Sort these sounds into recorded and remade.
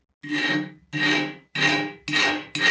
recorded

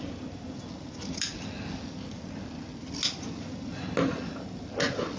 recorded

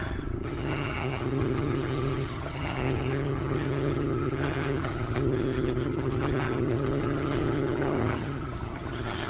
remade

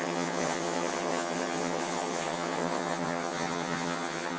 remade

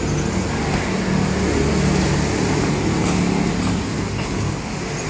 recorded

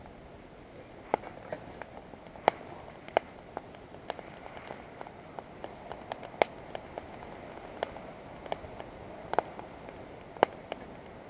recorded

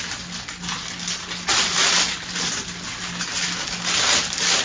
recorded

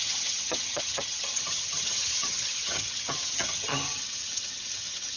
remade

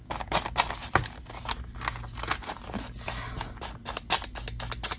recorded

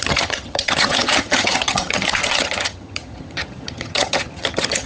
remade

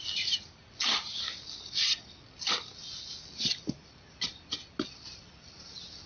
recorded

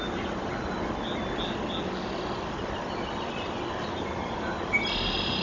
recorded